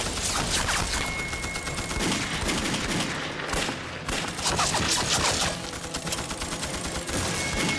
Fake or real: real